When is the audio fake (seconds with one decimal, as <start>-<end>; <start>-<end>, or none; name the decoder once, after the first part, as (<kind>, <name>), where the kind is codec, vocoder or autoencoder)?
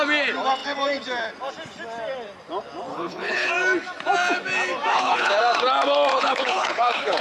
2.9-3.5 (codec, HILCodec); 4.9-5.4; 6.1-7.2